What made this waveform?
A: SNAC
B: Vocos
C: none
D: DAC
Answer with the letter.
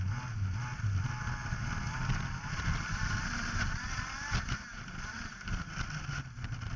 C